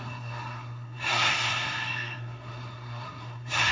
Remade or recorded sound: remade